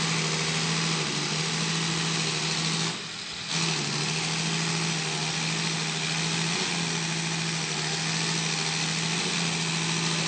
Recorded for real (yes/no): yes